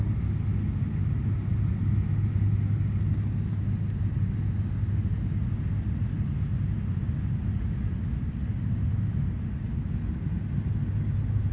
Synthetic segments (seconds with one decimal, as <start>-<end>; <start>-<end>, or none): none